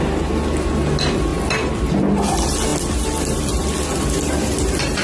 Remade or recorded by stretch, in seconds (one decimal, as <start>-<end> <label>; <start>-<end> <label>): 0.0-1.3 recorded; 1.3-1.9 remade; 1.9-5.0 recorded